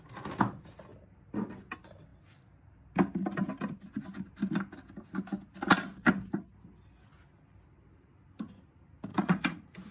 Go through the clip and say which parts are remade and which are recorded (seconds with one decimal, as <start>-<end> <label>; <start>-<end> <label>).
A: 0.0-9.1 recorded; 9.1-9.9 remade